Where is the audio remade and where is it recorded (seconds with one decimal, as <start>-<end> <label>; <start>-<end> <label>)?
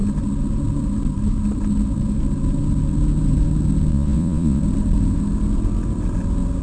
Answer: 0.0-3.9 recorded; 3.9-4.6 remade; 4.6-6.6 recorded